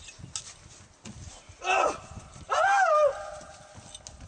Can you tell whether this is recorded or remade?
recorded